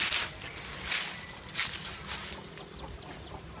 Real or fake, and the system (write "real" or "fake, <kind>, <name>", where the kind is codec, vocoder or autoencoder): real